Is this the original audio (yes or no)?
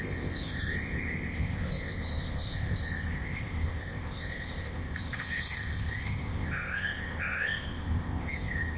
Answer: no